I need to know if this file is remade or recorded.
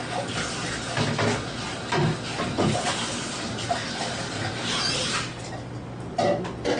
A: recorded